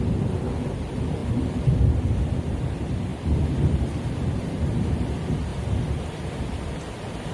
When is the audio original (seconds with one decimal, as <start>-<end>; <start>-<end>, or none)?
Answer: 5.5-6.4